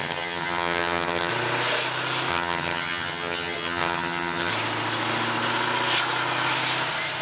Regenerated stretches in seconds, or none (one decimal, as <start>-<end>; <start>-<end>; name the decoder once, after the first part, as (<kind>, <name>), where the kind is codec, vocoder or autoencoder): 0.0-1.3 (vocoder, HiFi-GAN); 2.3-4.5